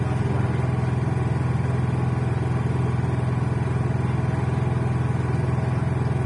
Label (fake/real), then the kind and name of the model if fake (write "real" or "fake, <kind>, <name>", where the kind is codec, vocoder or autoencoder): real